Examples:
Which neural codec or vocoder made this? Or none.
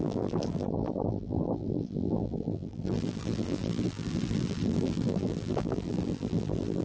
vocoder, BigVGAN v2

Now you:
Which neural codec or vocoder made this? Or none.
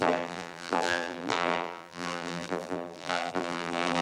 vocoder, BigVGAN v2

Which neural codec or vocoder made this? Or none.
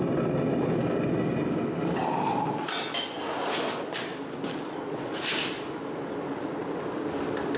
none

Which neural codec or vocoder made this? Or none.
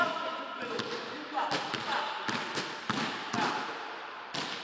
none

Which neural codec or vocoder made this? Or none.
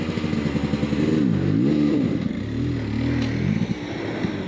none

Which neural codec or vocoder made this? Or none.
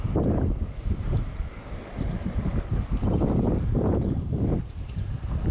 vocoder, BigVGAN v2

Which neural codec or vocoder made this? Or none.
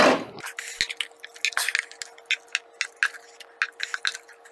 none